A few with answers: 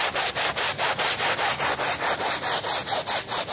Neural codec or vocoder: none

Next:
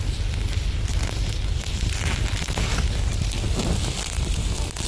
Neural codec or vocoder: none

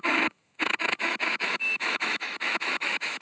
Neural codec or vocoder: autoencoder, DAC-VAE